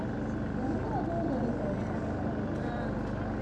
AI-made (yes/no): no